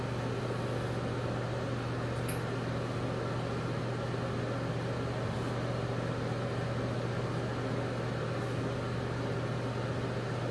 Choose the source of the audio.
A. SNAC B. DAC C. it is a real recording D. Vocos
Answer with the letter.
C